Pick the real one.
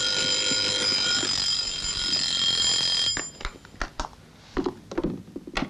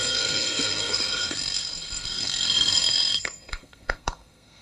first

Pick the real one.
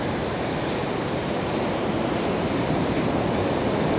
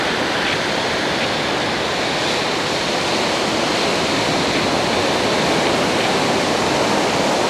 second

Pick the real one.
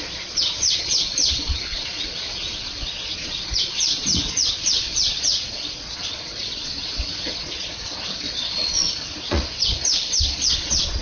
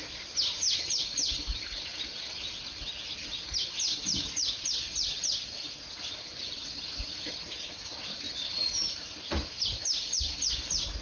second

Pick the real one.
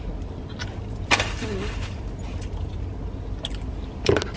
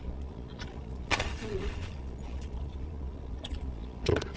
first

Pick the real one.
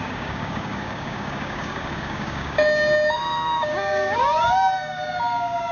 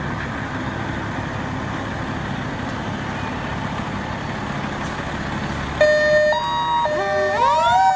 second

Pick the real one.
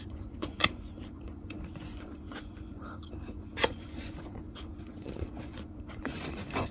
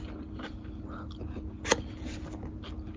second